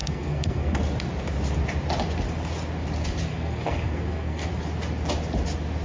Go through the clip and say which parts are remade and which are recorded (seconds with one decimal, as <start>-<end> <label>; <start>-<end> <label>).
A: 0.0-0.8 remade; 0.8-3.3 recorded; 3.3-4.5 remade; 4.5-5.8 recorded